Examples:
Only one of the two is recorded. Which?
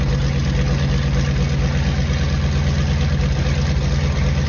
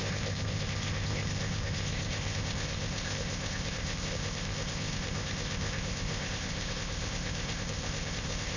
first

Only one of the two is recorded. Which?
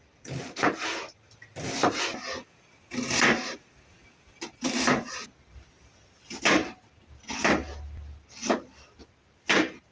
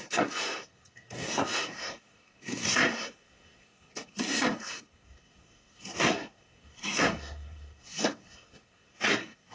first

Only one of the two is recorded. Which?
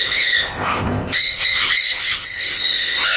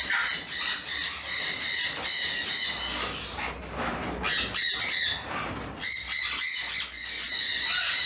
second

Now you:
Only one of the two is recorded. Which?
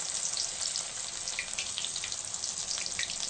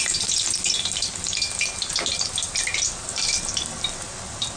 first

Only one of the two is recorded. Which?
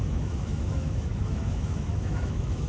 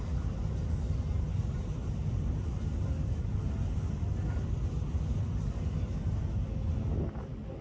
second